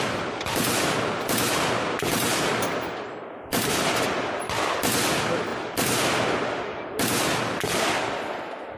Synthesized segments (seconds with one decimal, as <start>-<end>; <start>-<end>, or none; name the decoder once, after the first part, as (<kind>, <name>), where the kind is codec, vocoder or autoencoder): none

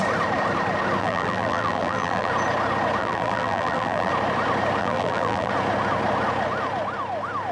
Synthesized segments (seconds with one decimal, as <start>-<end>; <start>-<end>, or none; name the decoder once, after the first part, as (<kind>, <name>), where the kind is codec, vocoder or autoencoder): 1.0-2.3 (vocoder, BigVGAN v2); 3.0-4.1; 4.8-5.5

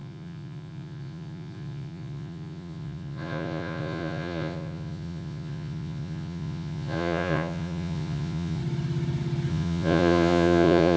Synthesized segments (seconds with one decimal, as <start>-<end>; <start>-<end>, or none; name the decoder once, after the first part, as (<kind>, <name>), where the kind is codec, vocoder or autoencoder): 0.0-8.6 (vocoder, Vocos); 9.5-11.0

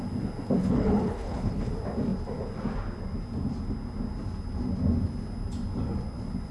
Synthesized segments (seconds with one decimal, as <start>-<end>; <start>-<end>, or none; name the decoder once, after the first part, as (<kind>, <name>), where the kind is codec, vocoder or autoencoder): 0.6-1.7 (codec, HILCodec)